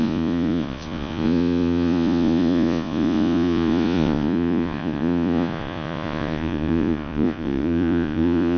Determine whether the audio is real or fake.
fake